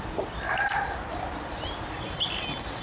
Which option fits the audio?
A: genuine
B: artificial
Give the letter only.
A